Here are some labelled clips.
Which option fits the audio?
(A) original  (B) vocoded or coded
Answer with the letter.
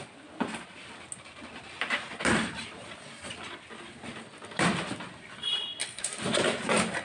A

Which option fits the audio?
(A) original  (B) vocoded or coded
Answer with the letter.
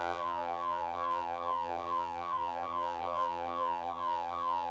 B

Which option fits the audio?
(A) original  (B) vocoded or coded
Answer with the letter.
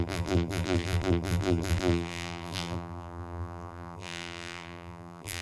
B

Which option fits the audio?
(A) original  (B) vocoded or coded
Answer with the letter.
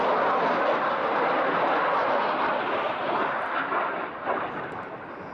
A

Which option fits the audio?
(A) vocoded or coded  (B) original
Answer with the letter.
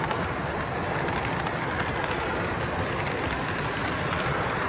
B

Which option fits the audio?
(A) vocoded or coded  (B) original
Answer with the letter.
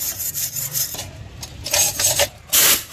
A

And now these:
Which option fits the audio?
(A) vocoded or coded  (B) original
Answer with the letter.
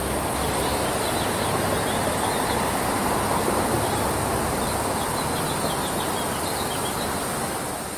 B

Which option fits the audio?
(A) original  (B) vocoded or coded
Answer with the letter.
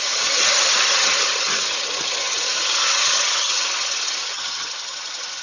B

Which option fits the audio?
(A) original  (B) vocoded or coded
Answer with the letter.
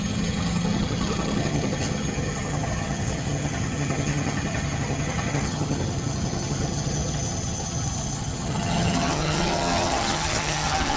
B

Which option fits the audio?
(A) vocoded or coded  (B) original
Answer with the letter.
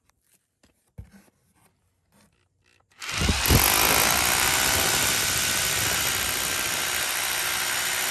B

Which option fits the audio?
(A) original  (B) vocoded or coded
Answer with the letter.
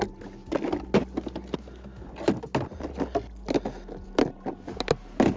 A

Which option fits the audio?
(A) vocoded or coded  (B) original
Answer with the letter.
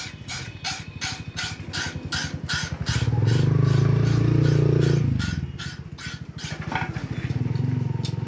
B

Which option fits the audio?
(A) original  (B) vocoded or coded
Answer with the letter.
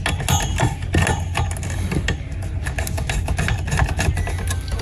A